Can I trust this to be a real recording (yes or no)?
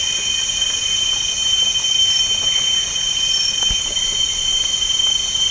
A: yes